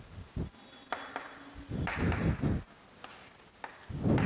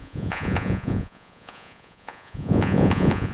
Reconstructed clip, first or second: second